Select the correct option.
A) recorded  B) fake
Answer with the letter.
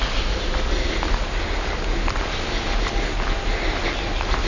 A